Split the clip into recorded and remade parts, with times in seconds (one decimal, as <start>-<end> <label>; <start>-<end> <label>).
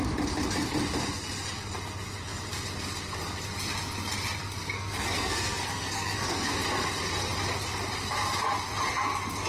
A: 0.0-4.4 recorded; 4.4-6.5 remade; 6.5-9.5 recorded